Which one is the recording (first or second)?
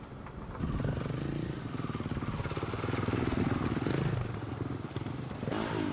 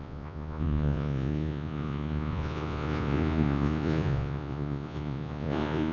first